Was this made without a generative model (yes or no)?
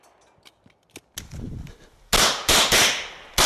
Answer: yes